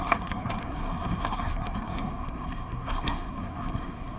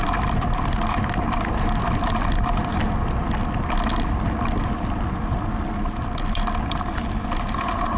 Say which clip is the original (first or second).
second